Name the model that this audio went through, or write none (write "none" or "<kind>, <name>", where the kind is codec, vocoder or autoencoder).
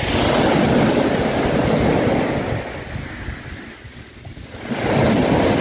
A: none